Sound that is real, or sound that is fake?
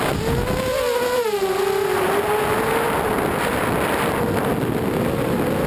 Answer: real